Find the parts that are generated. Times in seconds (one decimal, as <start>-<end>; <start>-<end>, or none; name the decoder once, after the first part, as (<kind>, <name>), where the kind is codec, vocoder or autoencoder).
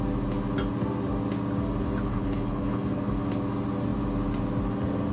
2.1-3.1 (codec, HILCodec)